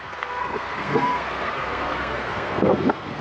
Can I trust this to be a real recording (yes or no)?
no